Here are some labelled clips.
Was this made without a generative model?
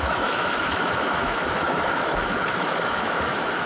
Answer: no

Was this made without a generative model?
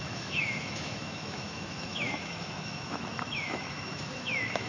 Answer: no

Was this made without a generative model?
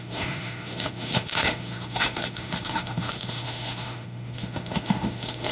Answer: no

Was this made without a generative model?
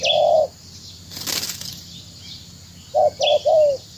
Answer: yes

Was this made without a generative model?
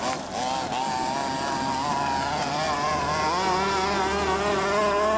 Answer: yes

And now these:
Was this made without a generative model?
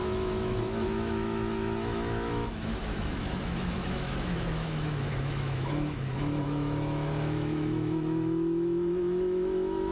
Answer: no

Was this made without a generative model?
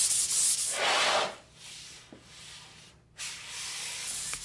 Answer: yes